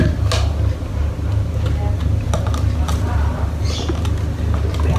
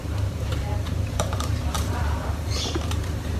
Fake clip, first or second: second